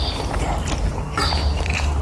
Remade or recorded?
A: remade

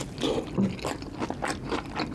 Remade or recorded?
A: recorded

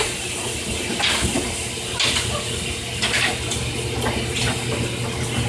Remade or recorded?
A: recorded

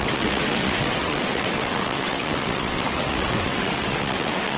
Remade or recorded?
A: remade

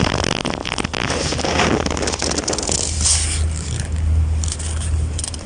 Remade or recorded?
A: recorded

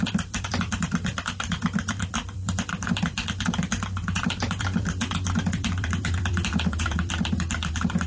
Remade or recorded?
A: remade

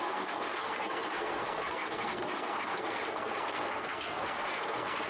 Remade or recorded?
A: remade